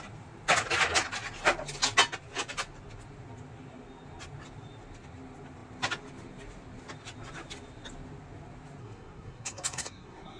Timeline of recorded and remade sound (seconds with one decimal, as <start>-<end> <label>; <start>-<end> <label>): 0.0-8.8 recorded; 8.8-10.4 remade